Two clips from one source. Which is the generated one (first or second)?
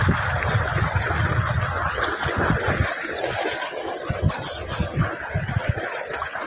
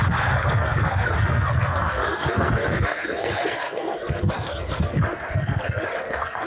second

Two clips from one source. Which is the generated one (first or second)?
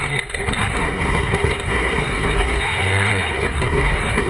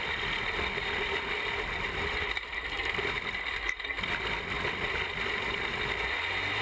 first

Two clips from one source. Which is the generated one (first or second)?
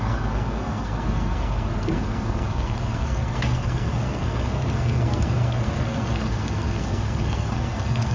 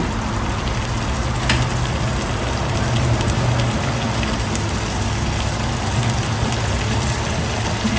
first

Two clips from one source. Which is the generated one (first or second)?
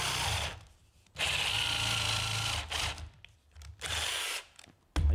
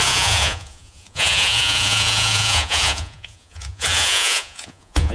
second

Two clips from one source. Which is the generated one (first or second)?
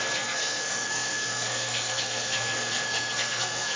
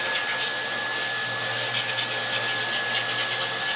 first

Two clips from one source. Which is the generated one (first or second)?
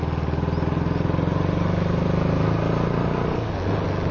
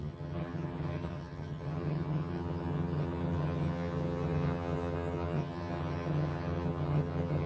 second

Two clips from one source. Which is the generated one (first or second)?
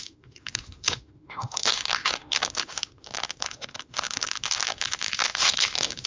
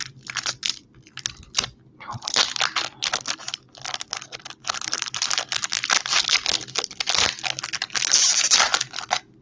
first